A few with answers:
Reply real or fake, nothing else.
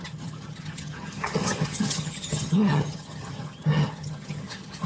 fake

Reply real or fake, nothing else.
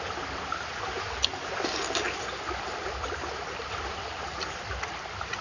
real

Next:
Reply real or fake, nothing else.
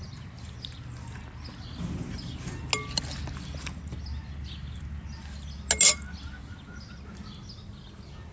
real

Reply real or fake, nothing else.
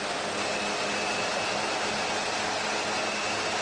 real